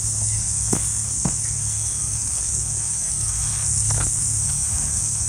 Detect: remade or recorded remade